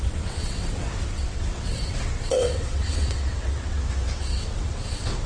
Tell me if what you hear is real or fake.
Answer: fake